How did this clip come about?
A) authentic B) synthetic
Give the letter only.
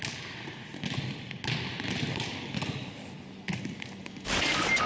A